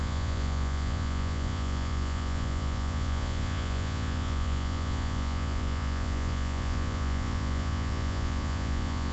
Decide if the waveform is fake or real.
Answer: fake